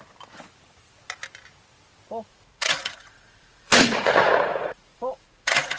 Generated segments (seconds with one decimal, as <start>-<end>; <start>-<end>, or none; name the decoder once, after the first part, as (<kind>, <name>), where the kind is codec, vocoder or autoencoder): 2.3-5.8 (vocoder, Vocos)